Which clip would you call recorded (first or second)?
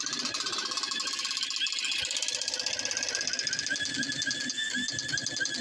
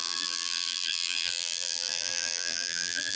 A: first